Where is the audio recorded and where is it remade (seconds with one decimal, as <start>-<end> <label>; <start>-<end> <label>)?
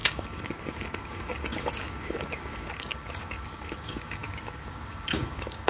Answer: 0.0-5.7 remade